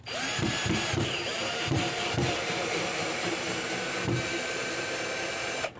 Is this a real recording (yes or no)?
no